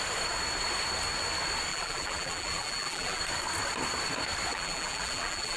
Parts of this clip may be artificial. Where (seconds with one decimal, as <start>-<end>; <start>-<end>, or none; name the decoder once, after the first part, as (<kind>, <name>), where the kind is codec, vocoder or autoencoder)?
1.7-3.2 (vocoder, BigVGAN v2); 4.5-5.6